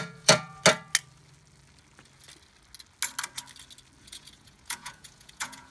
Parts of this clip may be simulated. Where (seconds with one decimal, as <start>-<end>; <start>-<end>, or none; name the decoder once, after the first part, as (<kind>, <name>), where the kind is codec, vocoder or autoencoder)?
0.0-0.6 (vocoder, Vocos); 4.0-5.7